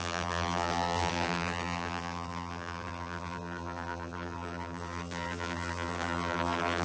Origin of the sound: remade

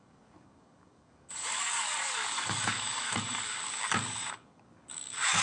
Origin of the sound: remade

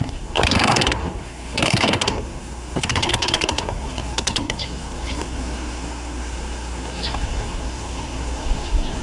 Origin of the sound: remade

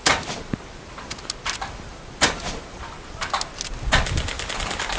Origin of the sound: recorded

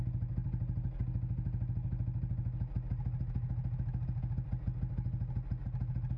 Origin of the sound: recorded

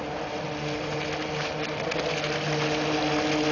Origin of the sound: recorded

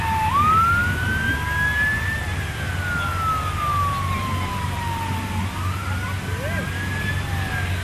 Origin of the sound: recorded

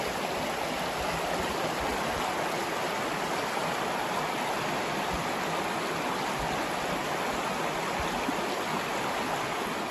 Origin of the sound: recorded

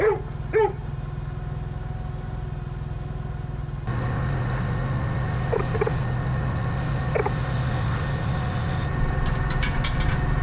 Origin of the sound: recorded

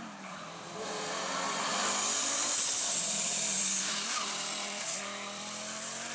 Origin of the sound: remade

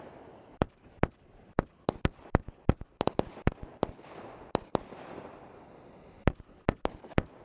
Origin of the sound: recorded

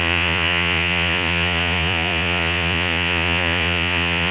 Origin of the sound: remade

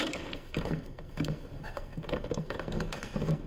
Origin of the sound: remade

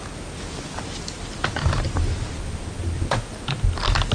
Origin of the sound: recorded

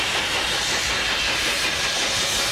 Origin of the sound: recorded